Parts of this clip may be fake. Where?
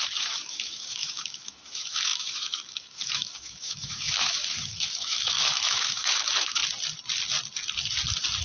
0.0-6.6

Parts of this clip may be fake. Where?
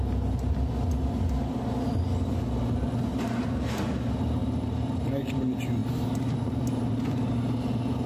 3.1-3.7; 4.4-5.0; 5.8-8.1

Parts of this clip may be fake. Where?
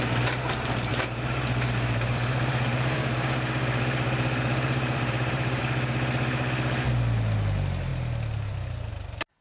0.9-5.6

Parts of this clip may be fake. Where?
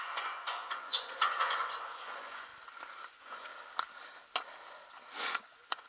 0.0-2.5; 3.1-3.5; 5.2-5.9